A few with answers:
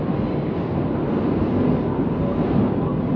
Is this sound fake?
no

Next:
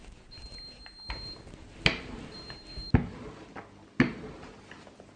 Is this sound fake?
no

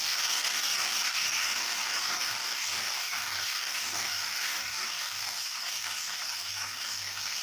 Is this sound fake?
yes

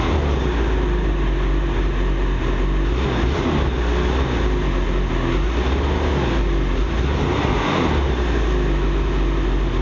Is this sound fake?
no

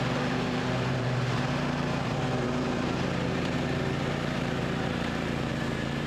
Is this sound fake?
yes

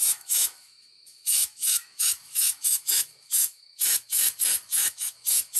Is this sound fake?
yes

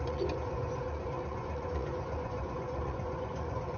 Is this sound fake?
yes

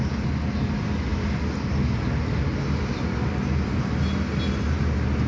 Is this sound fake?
no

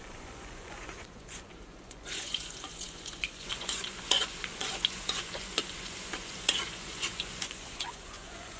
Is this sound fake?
yes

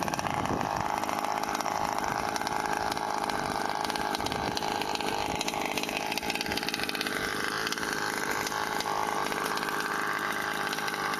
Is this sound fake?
no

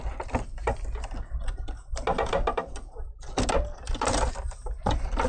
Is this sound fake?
no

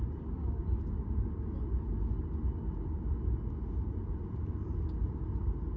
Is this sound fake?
no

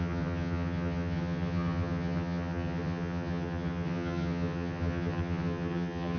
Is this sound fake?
yes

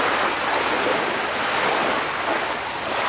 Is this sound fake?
no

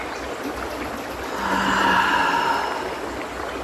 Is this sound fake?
no